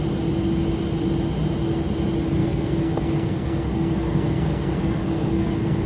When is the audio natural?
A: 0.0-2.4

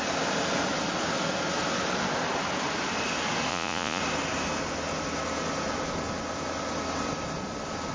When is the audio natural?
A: 0.0-3.5; 4.0-7.9

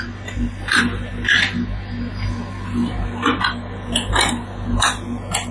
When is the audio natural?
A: 0.0-5.5

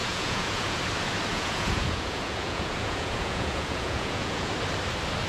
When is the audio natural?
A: 0.8-1.3; 4.5-5.3

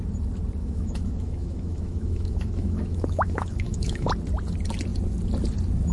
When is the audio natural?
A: 0.0-0.6; 4.1-5.9